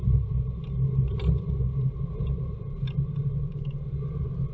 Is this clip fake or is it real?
real